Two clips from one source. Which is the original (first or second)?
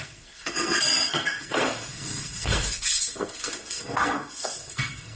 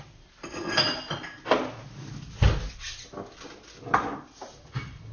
second